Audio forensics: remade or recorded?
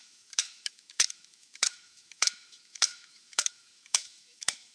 remade